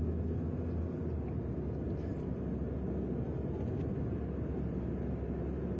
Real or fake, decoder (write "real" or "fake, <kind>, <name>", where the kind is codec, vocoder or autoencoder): real